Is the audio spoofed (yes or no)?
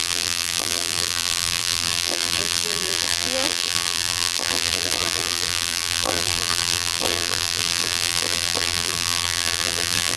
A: yes